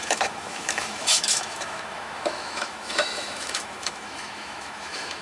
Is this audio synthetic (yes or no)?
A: yes